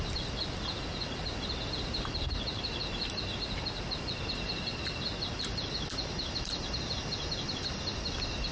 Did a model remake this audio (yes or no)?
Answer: no